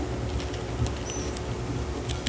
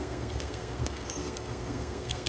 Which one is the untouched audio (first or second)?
first